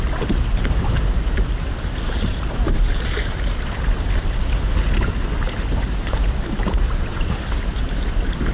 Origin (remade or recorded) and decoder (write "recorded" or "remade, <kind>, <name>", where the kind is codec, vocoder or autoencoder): remade, vocoder, BigVGAN v2